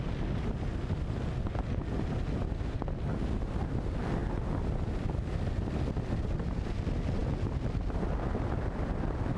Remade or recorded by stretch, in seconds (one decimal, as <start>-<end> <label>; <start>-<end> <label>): 0.0-9.4 recorded